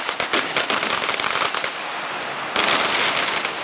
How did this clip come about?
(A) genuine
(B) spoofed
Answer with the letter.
A